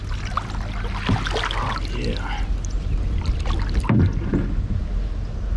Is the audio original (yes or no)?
yes